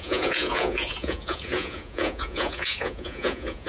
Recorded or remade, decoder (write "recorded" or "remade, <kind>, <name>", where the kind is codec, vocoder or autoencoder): remade, vocoder, Vocos